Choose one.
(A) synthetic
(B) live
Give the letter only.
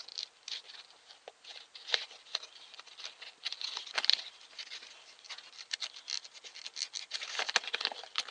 B